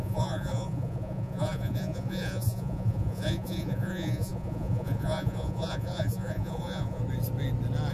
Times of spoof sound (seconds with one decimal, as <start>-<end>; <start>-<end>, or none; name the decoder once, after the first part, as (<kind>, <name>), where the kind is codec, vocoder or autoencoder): 0.0-7.0 (vocoder, Vocos)